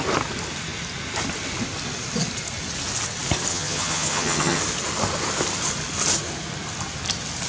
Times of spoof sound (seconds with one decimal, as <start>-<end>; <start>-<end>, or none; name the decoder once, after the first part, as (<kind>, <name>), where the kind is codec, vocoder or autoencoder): 3.5-4.6 (vocoder, HiFi-GAN)